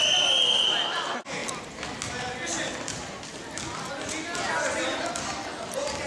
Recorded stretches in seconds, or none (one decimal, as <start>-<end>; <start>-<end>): 0.0-6.1